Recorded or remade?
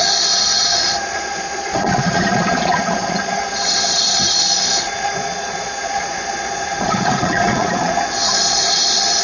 remade